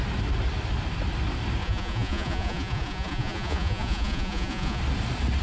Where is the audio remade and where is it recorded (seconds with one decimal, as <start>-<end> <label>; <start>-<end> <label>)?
0.0-1.6 recorded; 1.6-4.8 remade; 4.8-5.4 recorded